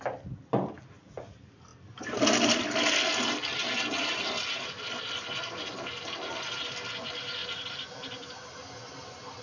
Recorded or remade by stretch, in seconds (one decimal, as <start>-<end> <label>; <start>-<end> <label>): 0.0-7.4 recorded; 7.4-8.6 remade; 8.6-9.4 recorded